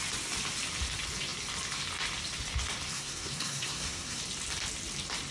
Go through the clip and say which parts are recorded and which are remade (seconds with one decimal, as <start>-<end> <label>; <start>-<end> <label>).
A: 0.0-2.9 recorded; 2.9-4.2 remade; 4.2-5.3 recorded